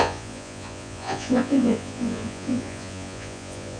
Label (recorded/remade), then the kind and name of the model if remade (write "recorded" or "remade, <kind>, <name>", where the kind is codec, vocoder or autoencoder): remade, vocoder, Vocos